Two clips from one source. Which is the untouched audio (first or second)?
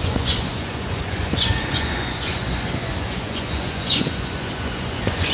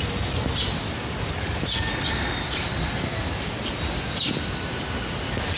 second